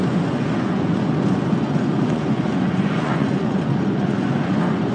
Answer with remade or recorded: remade